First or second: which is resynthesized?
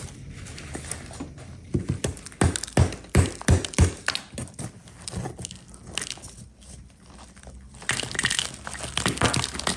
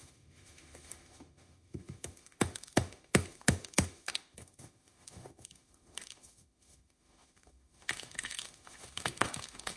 second